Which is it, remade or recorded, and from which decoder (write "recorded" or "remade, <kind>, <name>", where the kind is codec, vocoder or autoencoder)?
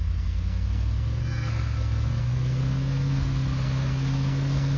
remade, codec, SNAC